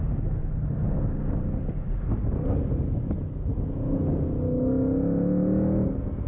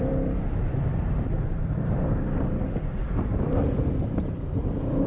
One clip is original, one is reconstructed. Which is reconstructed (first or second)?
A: second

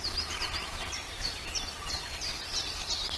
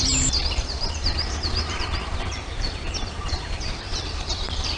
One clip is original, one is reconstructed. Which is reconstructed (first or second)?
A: second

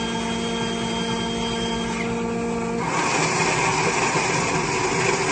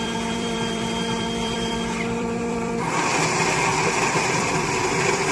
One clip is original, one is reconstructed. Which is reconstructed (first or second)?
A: second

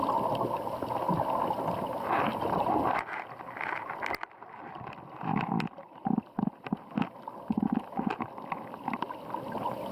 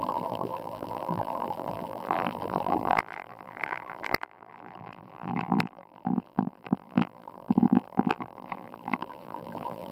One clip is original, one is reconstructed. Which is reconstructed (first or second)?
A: second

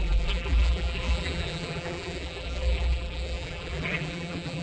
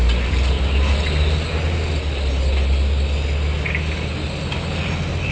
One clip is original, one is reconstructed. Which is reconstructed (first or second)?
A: first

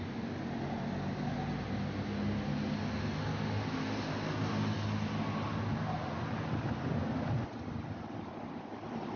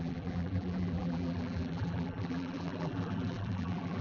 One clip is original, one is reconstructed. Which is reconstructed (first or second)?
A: second